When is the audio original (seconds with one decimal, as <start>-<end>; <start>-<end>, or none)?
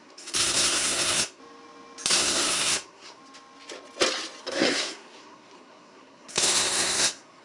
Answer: 1.4-2.1; 3.2-4.4